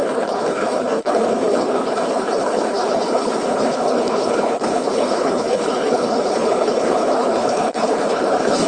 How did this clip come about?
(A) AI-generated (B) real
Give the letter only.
A